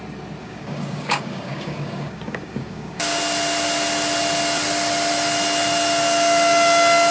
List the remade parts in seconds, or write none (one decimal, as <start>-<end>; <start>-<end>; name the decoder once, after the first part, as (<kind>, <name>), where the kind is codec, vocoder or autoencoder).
0.4-3.2 (codec, DAC)